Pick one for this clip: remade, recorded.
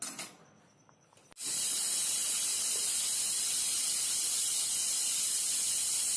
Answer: recorded